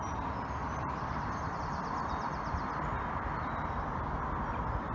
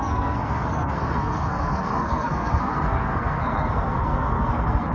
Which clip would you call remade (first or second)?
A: second